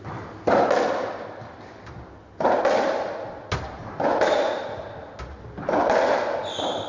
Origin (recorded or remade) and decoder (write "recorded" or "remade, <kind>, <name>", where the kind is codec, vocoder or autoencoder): recorded